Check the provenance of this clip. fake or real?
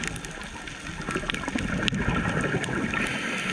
real